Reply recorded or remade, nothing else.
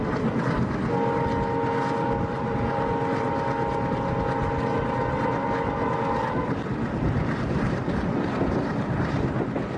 recorded